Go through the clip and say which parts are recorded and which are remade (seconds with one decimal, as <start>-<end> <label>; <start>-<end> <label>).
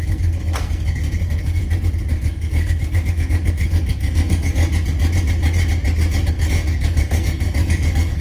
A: 0.0-1.6 remade; 1.6-2.1 recorded; 2.1-4.6 remade; 4.6-6.3 recorded; 6.3-8.2 remade